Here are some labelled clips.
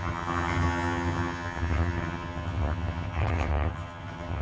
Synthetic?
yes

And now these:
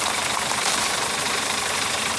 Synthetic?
yes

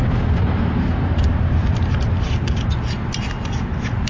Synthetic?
yes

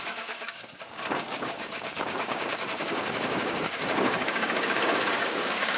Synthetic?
yes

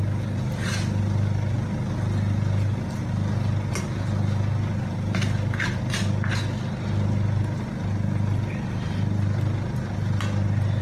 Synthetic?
no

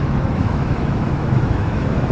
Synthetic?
yes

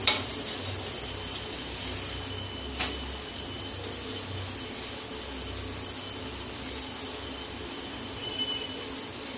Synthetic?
no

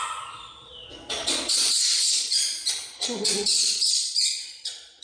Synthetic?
yes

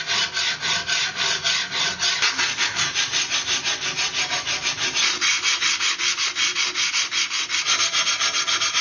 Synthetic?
no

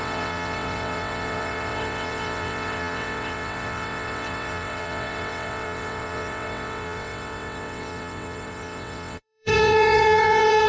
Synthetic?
yes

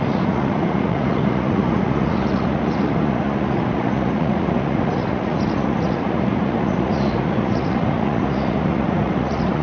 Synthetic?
yes